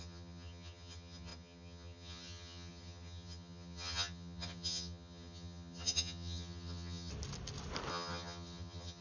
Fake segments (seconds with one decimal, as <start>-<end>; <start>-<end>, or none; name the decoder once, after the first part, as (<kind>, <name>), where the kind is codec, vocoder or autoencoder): 0.0-7.1 (vocoder, HiFi-GAN); 7.9-9.0